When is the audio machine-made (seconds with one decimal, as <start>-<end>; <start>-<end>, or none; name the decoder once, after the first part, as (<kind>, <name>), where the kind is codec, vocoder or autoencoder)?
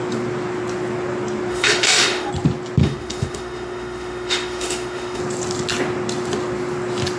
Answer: 1.5-2.3 (autoencoder, DAC-VAE); 2.8-5.2